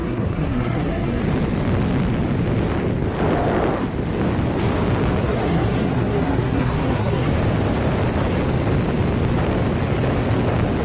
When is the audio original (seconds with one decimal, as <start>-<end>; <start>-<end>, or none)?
1.2-5.2; 7.3-10.8